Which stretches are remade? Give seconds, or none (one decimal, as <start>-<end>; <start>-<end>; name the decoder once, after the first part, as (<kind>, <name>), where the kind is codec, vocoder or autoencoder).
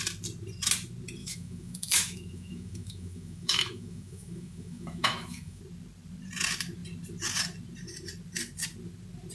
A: 1.2-5.6 (autoencoder, DAC-VAE)